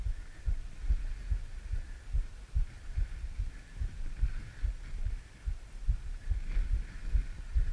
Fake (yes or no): no